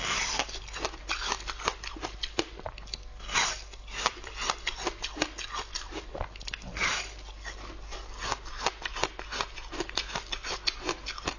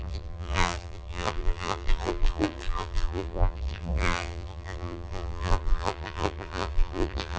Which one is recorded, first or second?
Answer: first